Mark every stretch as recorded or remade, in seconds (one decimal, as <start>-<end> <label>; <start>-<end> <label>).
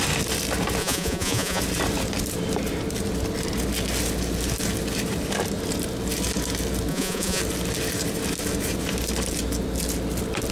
0.0-0.8 recorded; 0.8-1.6 remade; 1.6-6.9 recorded; 6.9-7.4 remade; 7.4-10.5 recorded